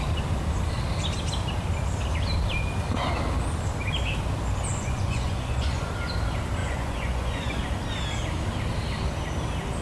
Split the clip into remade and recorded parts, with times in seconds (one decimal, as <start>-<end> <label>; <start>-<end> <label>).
0.0-4.7 recorded; 4.7-5.9 remade; 5.9-6.6 recorded; 6.6-7.6 remade; 7.6-9.8 recorded